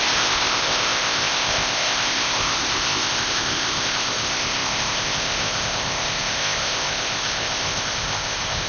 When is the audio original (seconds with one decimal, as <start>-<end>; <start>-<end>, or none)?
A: none